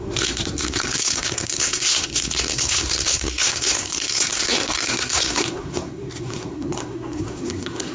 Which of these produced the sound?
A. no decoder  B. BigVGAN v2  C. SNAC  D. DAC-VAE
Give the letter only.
C